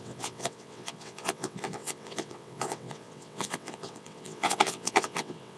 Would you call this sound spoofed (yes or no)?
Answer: yes